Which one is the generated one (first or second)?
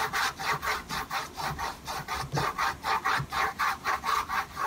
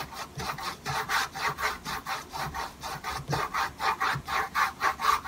first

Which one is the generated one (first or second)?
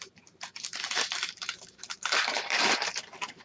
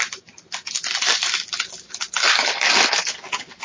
first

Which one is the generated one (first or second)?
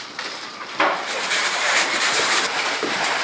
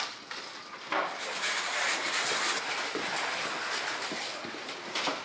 first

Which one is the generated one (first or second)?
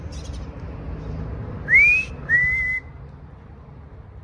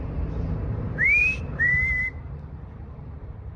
second